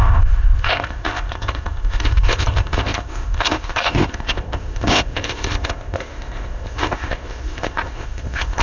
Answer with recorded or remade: remade